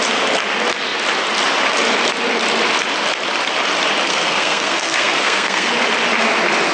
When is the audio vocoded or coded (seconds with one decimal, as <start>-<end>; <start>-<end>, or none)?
4.1-5.7